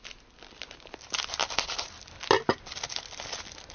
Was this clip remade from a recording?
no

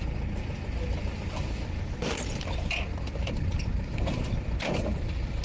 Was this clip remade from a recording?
no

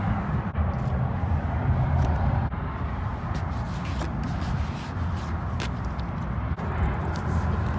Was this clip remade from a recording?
no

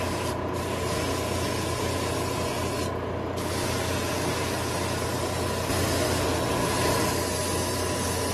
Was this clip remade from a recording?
no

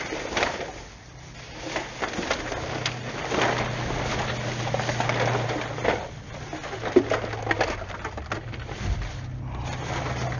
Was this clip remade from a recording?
no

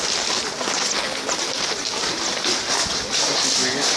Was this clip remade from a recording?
no